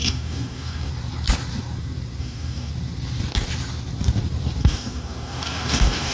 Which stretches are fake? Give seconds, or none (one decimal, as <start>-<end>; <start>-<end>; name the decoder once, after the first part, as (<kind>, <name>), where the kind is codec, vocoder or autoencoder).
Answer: 0.0-0.9 (codec, DAC); 2.2-2.7; 4.6-6.1